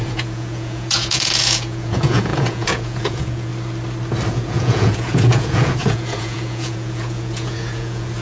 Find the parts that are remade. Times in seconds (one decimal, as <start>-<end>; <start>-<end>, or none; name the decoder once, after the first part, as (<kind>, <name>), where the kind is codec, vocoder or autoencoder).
0.0-3.5 (vocoder, Vocos); 4.3-8.2